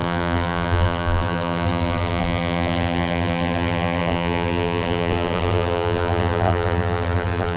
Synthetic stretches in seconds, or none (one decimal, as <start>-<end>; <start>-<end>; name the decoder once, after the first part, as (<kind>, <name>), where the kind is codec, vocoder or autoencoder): 0.0-7.6 (vocoder, BigVGAN v2)